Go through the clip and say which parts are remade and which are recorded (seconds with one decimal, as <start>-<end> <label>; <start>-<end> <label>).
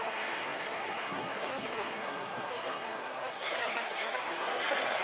0.0-5.0 remade